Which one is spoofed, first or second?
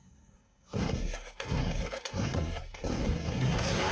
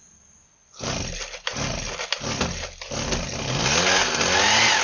first